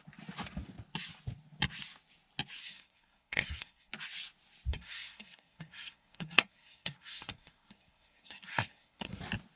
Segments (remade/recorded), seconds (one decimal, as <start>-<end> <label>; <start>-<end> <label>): 0.0-2.6 recorded; 2.6-3.9 remade; 3.9-4.7 recorded; 4.7-9.2 remade; 9.2-9.6 recorded

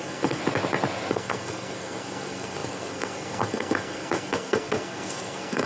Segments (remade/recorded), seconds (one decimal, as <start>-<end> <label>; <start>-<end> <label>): 0.0-0.4 remade; 0.4-1.1 recorded; 1.1-5.7 remade

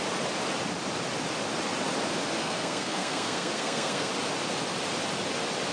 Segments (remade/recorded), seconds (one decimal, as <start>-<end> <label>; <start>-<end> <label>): 0.0-2.4 recorded; 2.4-4.1 remade; 4.1-5.7 recorded

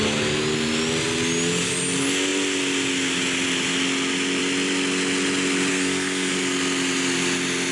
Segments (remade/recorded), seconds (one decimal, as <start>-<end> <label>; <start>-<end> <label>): 0.0-5.7 recorded; 5.7-6.3 remade; 6.3-7.7 recorded

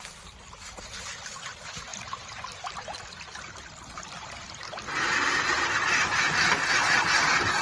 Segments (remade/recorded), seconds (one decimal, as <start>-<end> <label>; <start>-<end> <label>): 0.0-7.6 recorded

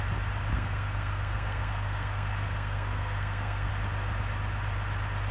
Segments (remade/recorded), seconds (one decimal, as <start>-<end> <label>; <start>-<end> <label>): 0.0-0.5 recorded; 0.5-3.7 remade; 3.7-5.3 recorded